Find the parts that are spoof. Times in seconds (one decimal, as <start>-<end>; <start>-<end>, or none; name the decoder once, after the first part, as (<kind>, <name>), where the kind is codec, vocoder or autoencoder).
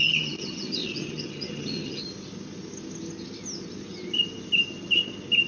0.0-2.0 (vocoder, HiFi-GAN)